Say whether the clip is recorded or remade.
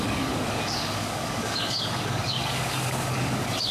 remade